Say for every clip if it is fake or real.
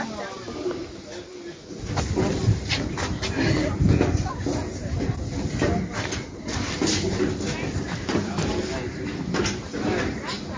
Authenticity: real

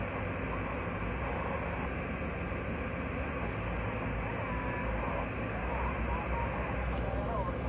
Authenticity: real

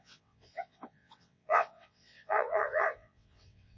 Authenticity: fake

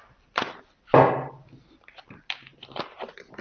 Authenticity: real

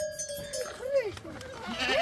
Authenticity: real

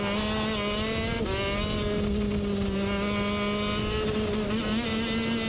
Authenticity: real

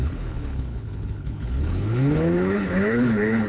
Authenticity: fake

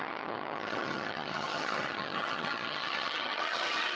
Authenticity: fake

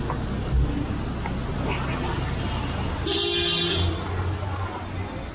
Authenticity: real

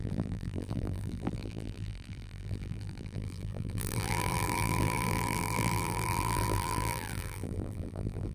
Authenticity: fake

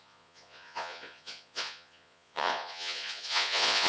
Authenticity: fake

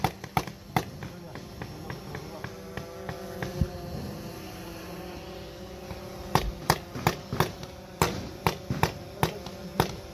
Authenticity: real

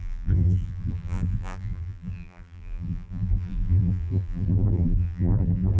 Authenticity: fake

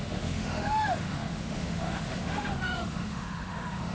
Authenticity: fake